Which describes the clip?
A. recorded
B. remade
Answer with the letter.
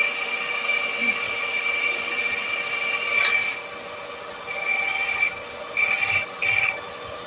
A